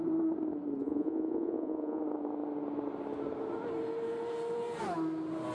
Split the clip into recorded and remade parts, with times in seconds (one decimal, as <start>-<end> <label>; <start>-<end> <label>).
0.0-0.8 recorded; 0.8-2.0 remade; 2.0-5.5 recorded